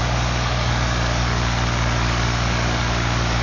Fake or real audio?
fake